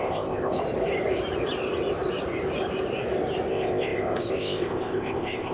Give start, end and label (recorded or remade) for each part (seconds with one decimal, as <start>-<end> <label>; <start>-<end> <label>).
0.0-0.6 remade; 0.6-3.5 recorded; 3.5-5.5 remade